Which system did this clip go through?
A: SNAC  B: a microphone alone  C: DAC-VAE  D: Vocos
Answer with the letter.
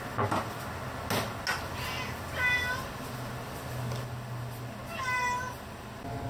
B